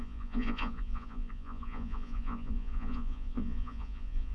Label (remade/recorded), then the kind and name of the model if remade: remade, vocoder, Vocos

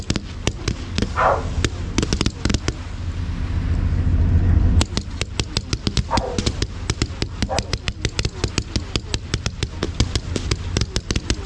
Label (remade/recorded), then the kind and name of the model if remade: recorded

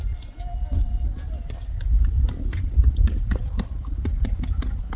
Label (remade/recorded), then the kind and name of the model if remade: recorded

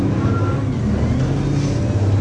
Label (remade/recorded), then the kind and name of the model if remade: recorded